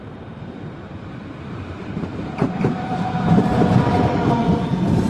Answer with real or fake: fake